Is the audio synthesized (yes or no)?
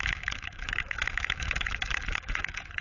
yes